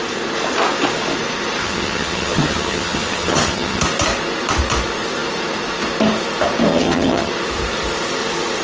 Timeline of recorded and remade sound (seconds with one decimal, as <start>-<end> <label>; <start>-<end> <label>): 0.0-1.6 recorded; 1.6-3.8 remade; 3.8-6.7 recorded; 6.7-7.3 remade; 7.3-8.6 recorded